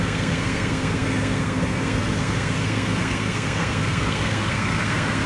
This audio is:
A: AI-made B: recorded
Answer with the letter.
A